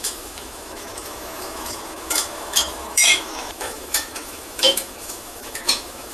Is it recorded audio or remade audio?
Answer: remade